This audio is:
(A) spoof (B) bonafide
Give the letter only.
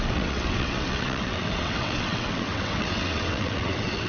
A